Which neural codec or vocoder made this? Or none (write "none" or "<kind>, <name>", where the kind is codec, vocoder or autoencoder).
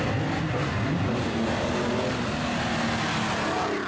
none